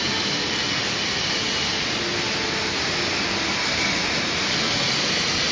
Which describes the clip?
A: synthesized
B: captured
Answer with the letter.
B